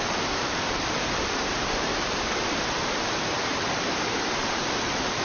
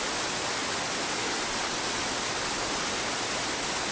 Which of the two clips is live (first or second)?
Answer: second